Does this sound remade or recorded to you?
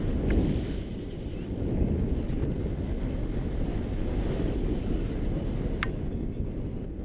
recorded